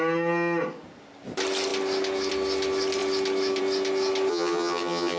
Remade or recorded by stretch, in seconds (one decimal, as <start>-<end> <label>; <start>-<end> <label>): 0.0-4.3 recorded; 4.3-5.2 remade